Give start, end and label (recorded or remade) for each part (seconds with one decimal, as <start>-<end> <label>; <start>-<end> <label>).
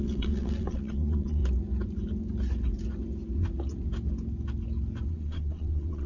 0.0-1.4 remade; 1.4-5.1 recorded; 5.1-6.1 remade